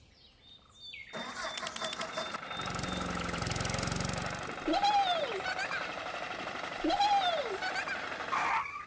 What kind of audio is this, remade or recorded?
recorded